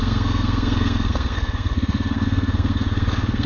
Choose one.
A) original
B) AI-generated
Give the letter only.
B